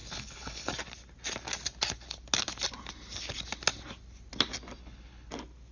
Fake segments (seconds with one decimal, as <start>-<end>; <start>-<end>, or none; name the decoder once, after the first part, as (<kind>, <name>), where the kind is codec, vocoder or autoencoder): 0.0-0.7 (codec, HILCodec); 4.8-5.3